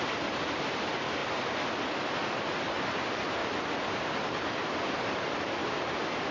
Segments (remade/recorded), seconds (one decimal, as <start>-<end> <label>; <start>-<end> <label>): 0.0-1.2 remade; 1.2-2.7 recorded; 2.7-3.4 remade; 3.4-4.1 recorded; 4.1-5.6 remade; 5.6-6.3 recorded